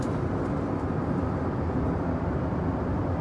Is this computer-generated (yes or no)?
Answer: yes